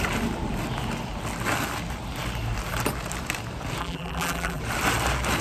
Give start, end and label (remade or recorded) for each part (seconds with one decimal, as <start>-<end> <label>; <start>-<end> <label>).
0.0-3.8 recorded; 3.8-4.6 remade; 4.6-5.4 recorded